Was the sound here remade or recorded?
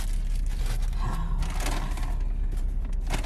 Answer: recorded